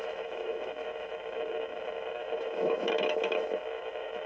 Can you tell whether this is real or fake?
fake